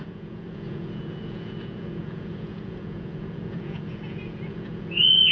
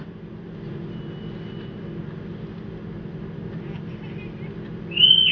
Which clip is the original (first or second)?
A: second